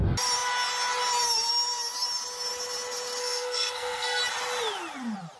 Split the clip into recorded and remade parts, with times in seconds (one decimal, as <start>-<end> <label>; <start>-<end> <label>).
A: 0.0-3.2 recorded; 3.2-4.2 remade; 4.2-5.4 recorded